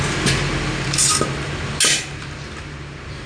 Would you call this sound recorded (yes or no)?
yes